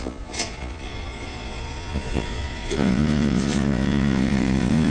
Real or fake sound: fake